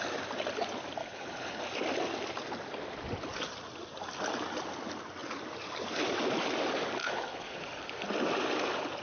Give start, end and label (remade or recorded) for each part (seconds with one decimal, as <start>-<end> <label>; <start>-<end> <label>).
0.0-1.0 recorded; 1.0-1.6 remade; 1.6-7.0 recorded; 7.0-7.6 remade; 7.6-9.0 recorded